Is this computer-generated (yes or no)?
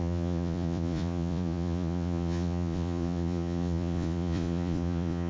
yes